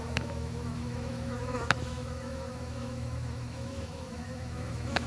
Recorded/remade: remade